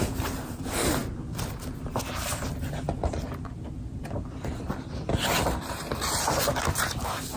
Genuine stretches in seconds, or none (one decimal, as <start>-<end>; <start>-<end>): 0.0-7.4